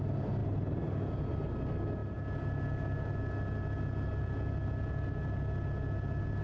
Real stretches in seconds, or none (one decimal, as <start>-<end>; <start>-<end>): 0.0-6.4